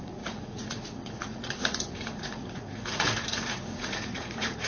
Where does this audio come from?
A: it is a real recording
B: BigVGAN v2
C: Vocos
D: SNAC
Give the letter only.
C